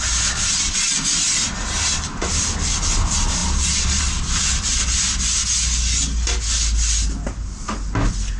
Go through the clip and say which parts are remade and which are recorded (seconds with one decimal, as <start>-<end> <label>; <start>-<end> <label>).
0.0-8.4 recorded